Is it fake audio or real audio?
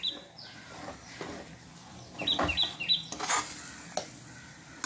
real